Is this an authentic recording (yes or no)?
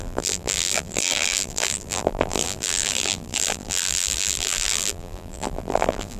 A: no